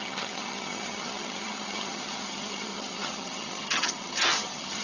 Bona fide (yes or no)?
no